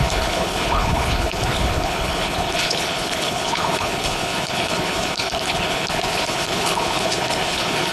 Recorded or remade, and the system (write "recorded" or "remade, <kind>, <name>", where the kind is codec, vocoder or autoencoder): remade, codec, HILCodec